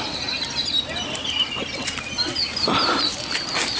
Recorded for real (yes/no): yes